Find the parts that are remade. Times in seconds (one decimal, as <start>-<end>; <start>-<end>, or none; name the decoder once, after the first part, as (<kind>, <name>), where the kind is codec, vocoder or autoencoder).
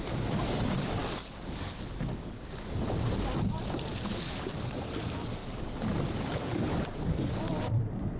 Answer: 0.0-1.0 (vocoder, BigVGAN v2); 4.5-8.2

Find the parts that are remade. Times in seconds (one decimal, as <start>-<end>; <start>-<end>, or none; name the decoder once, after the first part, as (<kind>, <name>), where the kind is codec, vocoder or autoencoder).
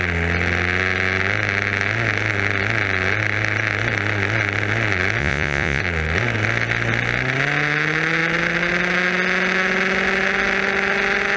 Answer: 5.2-5.8 (vocoder, Vocos)